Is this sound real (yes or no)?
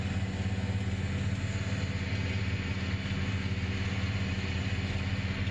yes